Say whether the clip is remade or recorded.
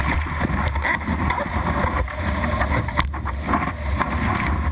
recorded